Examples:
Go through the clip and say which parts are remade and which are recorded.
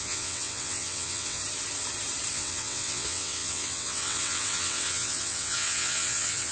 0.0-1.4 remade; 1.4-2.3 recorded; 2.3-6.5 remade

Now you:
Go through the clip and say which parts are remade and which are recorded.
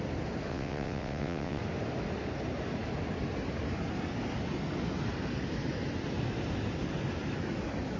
0.0-0.5 recorded; 0.5-1.6 remade; 1.6-8.0 recorded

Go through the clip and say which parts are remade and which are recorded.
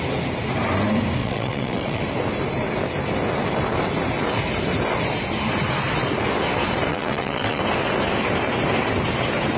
0.0-1.2 recorded; 1.2-2.0 remade; 2.0-6.9 recorded; 6.9-7.6 remade; 7.6-9.6 recorded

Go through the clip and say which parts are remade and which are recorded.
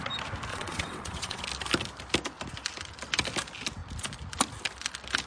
0.0-0.5 recorded; 0.5-1.4 remade; 1.4-5.3 recorded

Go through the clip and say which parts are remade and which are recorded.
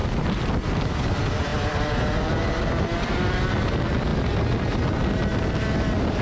0.0-6.2 recorded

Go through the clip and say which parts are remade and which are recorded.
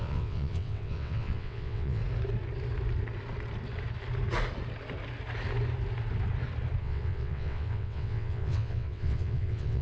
0.0-2.0 remade; 2.0-6.8 recorded; 6.8-9.8 remade